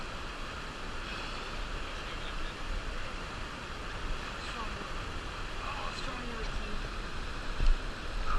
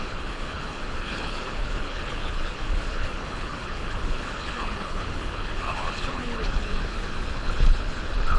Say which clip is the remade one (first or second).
second